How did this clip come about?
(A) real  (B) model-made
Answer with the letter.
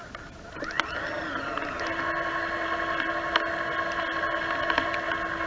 A